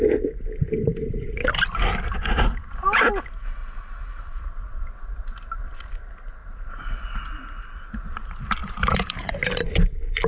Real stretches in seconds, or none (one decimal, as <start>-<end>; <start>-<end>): 0.0-3.6; 4.9-6.4; 7.2-8.6; 9.3-10.3